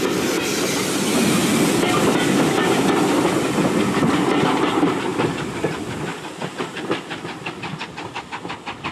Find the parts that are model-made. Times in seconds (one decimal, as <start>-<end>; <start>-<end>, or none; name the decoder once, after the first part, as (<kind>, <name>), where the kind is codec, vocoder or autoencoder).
5.1-6.0 (vocoder, BigVGAN v2)